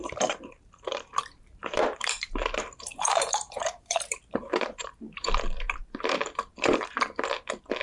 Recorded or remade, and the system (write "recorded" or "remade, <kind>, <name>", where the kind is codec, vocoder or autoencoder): remade, vocoder, BigVGAN v2